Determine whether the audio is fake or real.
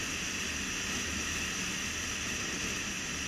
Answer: real